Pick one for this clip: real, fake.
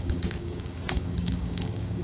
fake